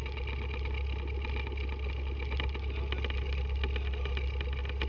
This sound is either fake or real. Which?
real